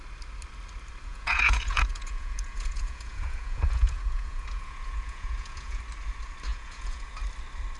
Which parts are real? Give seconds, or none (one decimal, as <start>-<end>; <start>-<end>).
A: 0.0-1.1; 5.8-6.5; 7.2-7.8